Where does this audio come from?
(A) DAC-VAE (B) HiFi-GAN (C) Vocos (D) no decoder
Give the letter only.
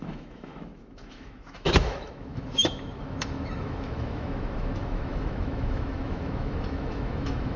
A